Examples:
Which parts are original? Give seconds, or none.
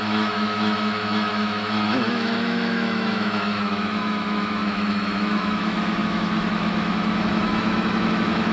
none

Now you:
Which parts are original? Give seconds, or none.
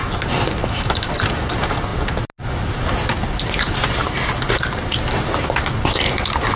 0.0-0.6; 1.1-6.6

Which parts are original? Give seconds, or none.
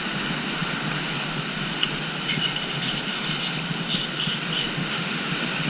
0.0-4.8; 5.3-5.7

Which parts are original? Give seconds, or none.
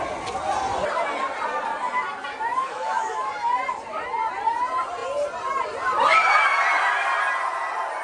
0.0-2.6; 3.5-8.0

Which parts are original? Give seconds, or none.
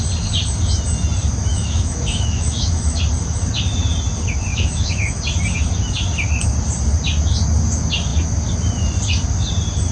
0.0-1.5; 3.0-4.5; 5.2-9.9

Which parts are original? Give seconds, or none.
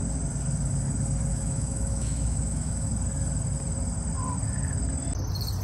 0.0-1.3; 2.9-5.6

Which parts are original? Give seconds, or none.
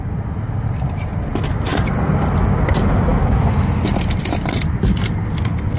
0.0-5.8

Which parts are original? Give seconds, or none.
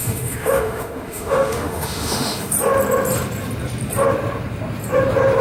2.5-5.4